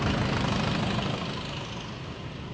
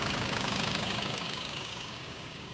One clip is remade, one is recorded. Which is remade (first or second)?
second